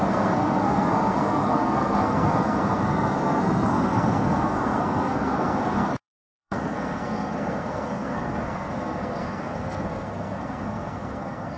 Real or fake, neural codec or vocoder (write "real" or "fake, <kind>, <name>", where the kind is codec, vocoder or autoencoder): fake, codec, SNAC